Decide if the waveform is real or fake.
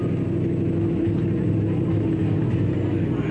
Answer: real